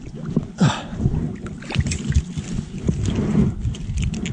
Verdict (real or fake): real